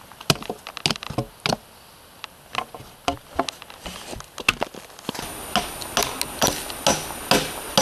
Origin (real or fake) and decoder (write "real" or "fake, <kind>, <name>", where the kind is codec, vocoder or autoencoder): real